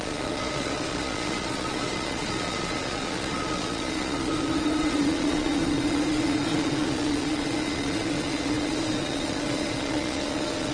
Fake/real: fake